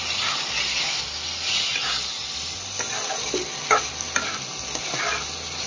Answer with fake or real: real